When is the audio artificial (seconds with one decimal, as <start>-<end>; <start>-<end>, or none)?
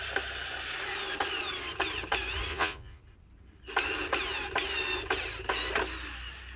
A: 2.5-3.0